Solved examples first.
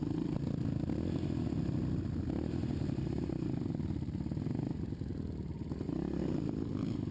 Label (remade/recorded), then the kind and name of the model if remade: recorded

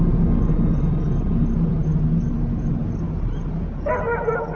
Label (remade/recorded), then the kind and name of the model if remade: recorded